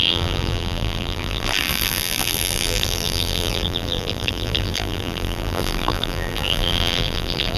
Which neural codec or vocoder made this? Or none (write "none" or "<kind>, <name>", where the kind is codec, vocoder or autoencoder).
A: vocoder, BigVGAN v2